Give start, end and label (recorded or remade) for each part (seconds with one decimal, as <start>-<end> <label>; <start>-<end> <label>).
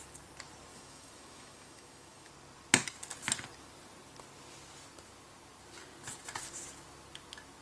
0.0-0.7 recorded; 0.7-2.3 remade; 2.3-7.6 recorded